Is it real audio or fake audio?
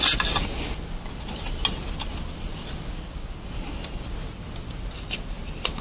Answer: real